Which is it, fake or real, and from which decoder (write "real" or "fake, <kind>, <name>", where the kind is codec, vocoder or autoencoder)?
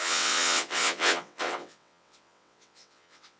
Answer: fake, vocoder, WaveNeXt